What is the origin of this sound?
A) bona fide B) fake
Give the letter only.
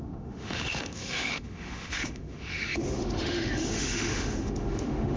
B